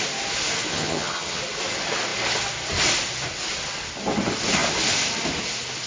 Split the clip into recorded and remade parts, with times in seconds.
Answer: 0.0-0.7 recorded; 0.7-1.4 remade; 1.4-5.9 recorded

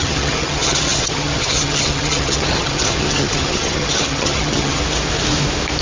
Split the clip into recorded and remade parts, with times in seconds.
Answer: 0.0-4.8 remade; 4.8-5.8 recorded

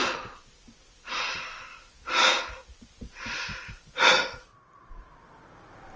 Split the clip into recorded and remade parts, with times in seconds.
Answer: 0.0-6.0 recorded